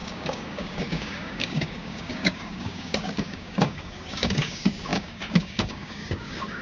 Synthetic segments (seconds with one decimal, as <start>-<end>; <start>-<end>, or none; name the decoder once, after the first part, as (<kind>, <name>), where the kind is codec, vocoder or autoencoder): 0.0-6.6 (codec, DAC)